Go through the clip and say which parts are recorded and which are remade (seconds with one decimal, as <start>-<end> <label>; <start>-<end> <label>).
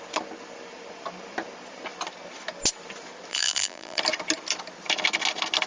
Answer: 0.0-3.3 recorded; 3.3-4.0 remade; 4.0-5.7 recorded